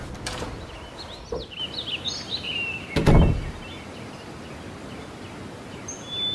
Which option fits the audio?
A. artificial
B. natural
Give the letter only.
B